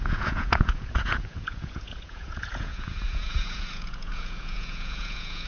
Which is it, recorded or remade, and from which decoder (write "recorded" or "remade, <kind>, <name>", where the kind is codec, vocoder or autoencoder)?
remade, vocoder, Vocos